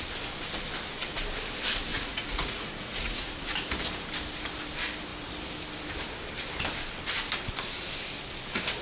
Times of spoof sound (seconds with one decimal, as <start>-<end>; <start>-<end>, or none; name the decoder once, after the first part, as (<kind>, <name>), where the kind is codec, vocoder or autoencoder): 1.9-3.3 (vocoder, Vocos)